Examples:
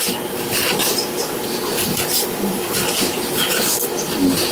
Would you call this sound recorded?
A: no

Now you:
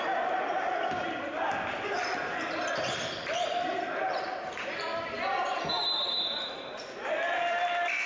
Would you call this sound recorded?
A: no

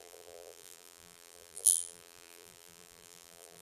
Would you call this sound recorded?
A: no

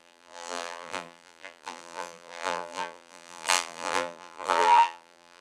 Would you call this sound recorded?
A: no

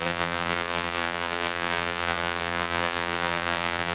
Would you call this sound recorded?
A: no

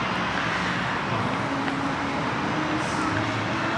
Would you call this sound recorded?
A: yes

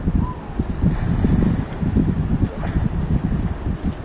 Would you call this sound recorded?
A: yes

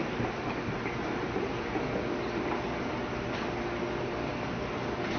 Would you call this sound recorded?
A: yes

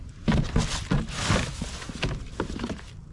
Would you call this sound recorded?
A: no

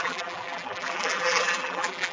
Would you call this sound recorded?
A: no